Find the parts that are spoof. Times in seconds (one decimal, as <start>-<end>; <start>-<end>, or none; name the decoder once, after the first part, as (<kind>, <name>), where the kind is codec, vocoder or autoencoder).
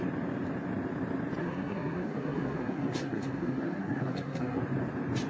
1.4-4.6 (codec, SNAC)